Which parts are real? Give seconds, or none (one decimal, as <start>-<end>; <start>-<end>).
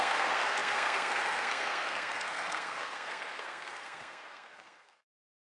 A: none